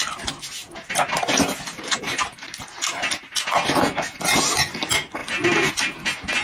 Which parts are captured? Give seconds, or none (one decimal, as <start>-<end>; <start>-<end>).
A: 0.0-6.4

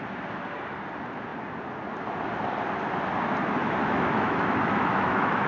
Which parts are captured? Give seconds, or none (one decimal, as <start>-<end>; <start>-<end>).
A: 0.0-3.6

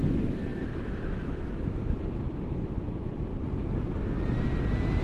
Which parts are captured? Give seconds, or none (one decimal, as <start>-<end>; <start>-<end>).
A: 3.3-5.0